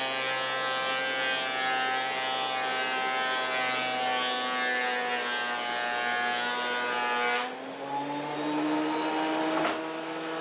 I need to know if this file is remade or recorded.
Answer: recorded